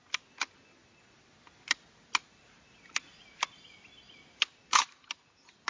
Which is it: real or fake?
real